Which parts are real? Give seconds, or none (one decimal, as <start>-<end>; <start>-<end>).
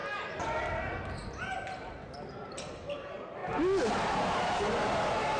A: 0.0-5.4